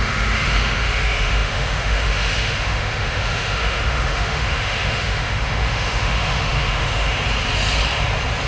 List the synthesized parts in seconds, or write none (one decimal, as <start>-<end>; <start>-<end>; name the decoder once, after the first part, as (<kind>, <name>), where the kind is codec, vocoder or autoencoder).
0.0-7.2 (autoencoder, DAC-VAE)